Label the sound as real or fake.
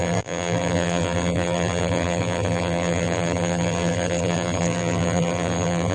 fake